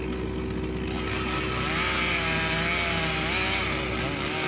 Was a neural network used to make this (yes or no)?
no